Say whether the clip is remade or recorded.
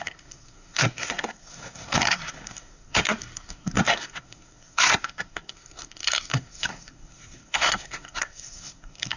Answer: remade